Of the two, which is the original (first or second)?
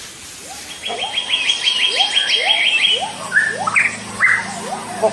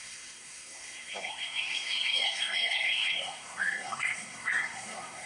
first